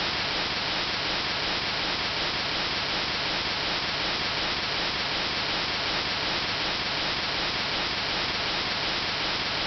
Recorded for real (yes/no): yes